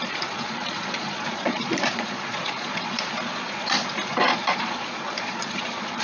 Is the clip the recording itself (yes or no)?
no